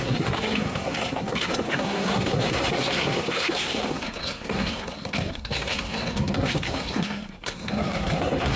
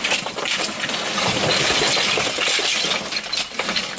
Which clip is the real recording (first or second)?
second